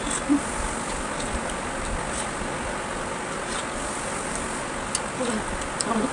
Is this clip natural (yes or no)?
yes